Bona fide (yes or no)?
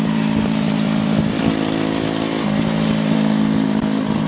yes